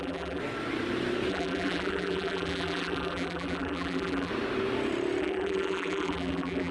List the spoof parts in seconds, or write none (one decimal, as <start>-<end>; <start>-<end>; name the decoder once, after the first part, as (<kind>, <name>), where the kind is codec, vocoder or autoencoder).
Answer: 0.0-0.4 (vocoder, BigVGAN v2); 1.3-4.3; 5.2-6.7